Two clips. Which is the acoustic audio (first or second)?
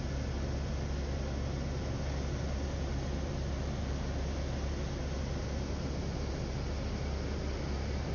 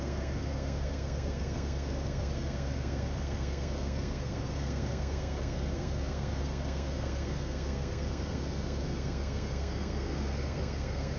first